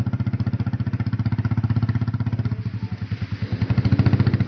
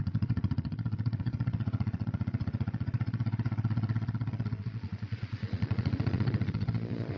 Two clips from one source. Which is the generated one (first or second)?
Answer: second